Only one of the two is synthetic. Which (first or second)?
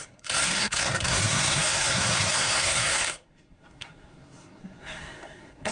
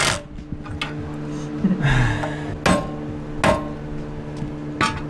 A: first